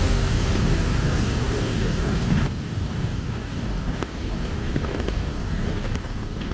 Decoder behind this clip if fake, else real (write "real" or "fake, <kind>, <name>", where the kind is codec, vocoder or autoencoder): fake, codec, DAC